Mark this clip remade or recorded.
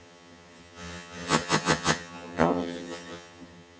remade